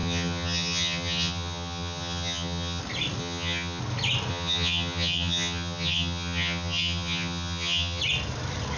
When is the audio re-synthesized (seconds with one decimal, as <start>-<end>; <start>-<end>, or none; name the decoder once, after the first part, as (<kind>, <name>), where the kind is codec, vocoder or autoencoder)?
0.0-2.8 (vocoder, HiFi-GAN); 3.2-3.8; 4.3-8.0